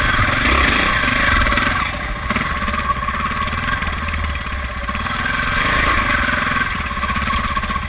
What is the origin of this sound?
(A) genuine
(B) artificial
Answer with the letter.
A